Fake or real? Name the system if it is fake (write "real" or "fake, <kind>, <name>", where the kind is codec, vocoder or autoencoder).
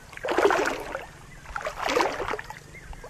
real